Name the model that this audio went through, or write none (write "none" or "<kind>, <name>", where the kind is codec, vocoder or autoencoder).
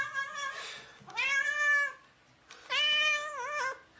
none